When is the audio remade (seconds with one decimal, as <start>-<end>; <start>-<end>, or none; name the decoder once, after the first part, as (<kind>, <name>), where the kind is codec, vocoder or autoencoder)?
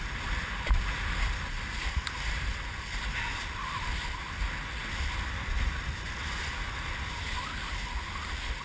none